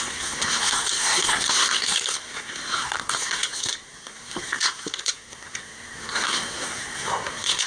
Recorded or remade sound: remade